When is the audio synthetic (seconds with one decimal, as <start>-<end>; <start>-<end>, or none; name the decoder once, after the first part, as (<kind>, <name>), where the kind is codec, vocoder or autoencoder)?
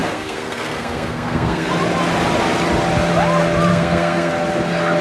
0.0-1.7 (codec, SNAC); 3.7-4.3